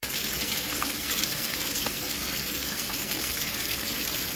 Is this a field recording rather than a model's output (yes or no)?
no